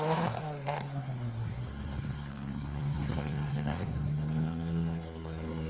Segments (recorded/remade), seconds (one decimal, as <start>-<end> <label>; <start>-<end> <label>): 0.0-5.7 remade